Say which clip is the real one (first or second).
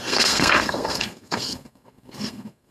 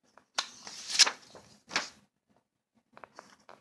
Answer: second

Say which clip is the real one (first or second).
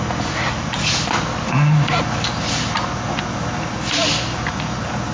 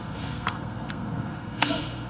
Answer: first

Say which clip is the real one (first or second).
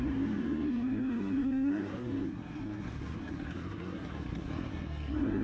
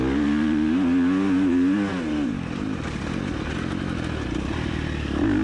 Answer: second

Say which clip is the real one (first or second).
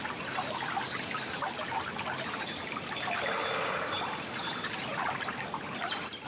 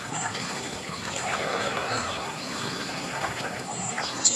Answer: first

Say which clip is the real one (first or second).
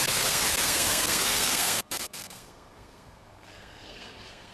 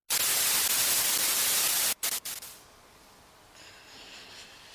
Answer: second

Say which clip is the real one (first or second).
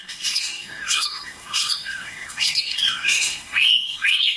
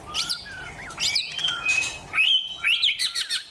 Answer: second